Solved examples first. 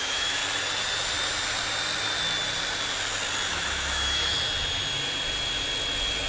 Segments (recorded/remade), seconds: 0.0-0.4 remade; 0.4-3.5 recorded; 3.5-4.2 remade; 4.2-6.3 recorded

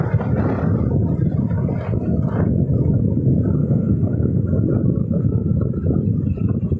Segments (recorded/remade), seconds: 0.0-3.6 recorded; 3.6-4.4 remade; 4.4-5.0 recorded; 5.0-5.5 remade; 5.5-6.8 recorded